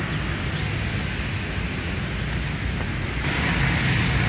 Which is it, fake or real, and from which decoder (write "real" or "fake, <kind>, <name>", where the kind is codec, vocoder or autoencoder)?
real